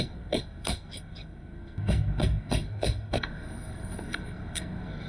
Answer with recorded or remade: remade